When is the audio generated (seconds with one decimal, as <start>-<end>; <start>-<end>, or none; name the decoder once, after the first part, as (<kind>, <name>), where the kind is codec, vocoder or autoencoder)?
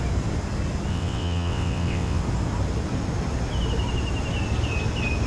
0.9-2.2 (vocoder, WaveNeXt)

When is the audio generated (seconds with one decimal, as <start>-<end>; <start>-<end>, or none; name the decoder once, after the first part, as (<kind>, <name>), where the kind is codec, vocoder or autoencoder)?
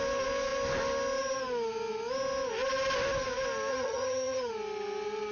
3.7-4.5 (vocoder, HiFi-GAN)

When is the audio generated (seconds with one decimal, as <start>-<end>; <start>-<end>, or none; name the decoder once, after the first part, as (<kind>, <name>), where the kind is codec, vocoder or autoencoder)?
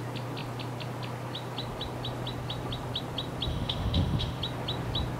3.5-4.4 (autoencoder, DAC-VAE)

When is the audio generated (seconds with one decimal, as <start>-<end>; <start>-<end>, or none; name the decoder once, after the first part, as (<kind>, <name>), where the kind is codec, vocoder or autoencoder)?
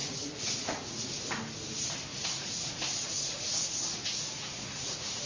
0.0-1.3 (vocoder, Vocos); 2.1-5.3